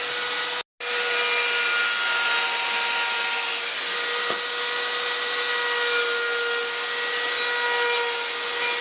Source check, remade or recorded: recorded